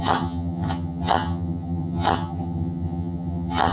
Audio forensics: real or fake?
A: fake